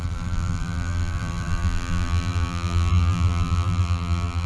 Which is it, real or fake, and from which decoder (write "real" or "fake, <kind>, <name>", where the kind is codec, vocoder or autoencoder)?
fake, vocoder, BigVGAN v2